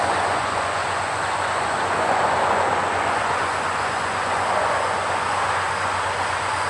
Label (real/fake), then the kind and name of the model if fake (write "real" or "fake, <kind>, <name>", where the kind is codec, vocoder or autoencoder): fake, vocoder, Vocos